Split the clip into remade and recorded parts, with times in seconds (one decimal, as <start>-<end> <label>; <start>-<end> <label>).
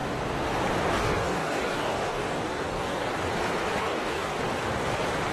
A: 0.0-0.9 recorded; 0.9-3.1 remade; 3.1-3.8 recorded; 3.8-4.3 remade; 4.3-5.3 recorded